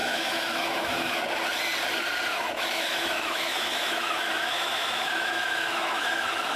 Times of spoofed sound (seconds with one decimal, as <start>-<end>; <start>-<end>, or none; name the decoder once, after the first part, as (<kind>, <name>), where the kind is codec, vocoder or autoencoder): 0.0-1.2 (autoencoder, DAC-VAE); 2.3-6.6